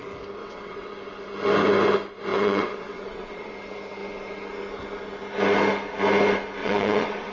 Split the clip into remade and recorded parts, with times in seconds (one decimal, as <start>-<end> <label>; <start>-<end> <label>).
0.0-0.4 recorded; 0.4-0.9 remade; 0.9-2.3 recorded; 2.3-3.5 remade; 3.5-6.6 recorded; 6.6-7.3 remade